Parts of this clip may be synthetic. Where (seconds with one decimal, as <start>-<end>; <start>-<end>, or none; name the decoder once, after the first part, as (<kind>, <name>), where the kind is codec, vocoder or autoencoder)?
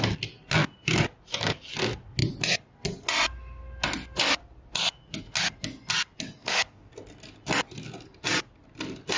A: 6.4-6.9 (codec, DAC)